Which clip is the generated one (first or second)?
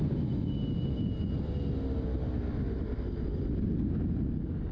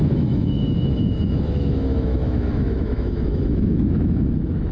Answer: second